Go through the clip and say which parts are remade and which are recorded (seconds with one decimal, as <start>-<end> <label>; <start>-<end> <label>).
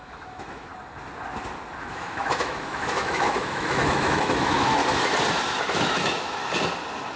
0.0-0.7 remade; 0.7-1.9 recorded; 1.9-4.8 remade; 4.8-5.8 recorded; 5.8-6.4 remade; 6.4-7.2 recorded